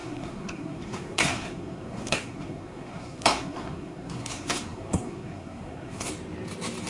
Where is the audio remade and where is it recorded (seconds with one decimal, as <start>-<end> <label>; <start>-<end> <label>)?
0.0-6.1 remade; 6.1-6.9 recorded